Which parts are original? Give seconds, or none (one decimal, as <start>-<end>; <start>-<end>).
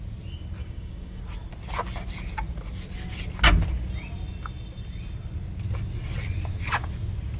0.0-0.6; 1.2-7.4